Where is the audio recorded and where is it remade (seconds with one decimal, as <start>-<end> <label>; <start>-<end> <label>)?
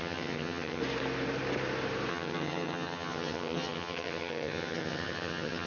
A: 0.0-0.8 remade; 0.8-2.1 recorded; 2.1-5.7 remade